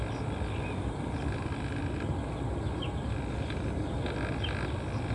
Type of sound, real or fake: real